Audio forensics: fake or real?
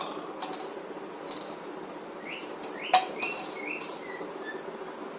real